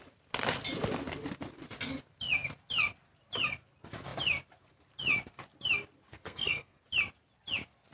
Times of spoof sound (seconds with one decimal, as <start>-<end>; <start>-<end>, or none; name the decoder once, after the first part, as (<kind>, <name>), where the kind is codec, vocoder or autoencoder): 6.1-6.8 (codec, SNAC)